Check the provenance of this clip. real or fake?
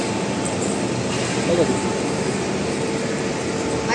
real